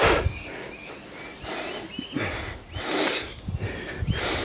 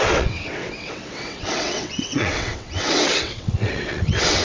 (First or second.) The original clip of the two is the first